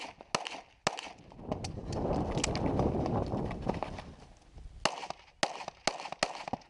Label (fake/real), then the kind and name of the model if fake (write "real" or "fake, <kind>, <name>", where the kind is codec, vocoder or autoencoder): real